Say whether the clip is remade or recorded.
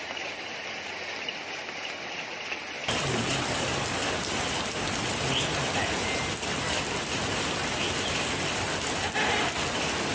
recorded